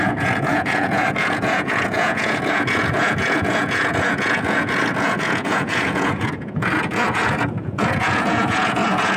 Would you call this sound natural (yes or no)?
no